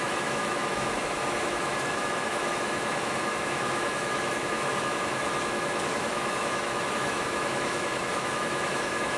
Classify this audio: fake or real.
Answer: fake